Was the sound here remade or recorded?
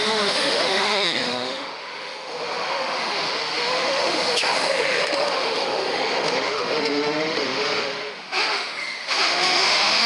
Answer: remade